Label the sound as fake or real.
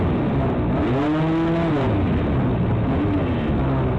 real